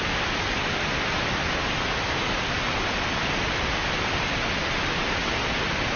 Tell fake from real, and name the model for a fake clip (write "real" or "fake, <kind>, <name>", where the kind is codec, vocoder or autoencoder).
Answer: real